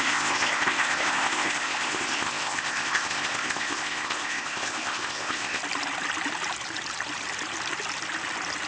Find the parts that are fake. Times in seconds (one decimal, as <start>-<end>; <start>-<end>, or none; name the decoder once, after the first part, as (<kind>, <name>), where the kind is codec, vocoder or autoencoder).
0.0-5.6 (codec, ZipCodec)